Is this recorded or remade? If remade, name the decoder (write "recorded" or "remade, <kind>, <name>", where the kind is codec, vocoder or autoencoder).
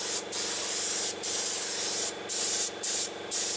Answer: recorded